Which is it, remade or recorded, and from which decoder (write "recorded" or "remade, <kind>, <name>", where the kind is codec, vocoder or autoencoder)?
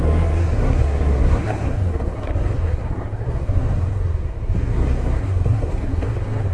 remade, codec, SNAC